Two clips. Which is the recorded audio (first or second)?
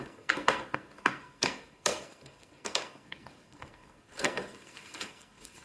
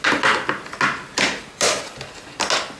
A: second